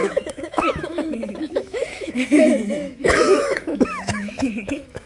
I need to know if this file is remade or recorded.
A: remade